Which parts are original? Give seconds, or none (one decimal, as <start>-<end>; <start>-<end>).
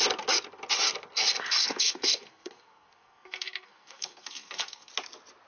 0.0-1.6; 4.9-5.5